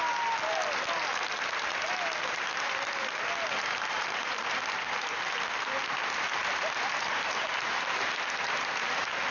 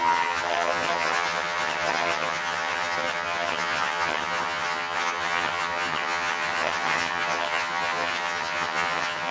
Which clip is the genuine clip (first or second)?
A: first